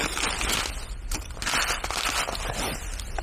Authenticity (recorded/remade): recorded